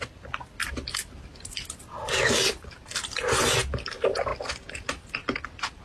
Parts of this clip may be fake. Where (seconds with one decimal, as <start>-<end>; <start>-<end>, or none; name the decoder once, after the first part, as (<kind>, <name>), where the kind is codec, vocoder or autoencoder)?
none